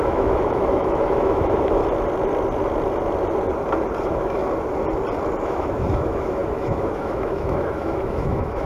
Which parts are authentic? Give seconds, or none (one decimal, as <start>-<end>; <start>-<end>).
1.8-4.0; 4.4-5.4